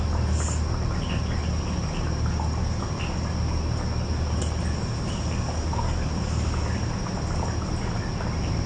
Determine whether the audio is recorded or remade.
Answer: recorded